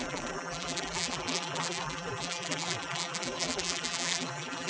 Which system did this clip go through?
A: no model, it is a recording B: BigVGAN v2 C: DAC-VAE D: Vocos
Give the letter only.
B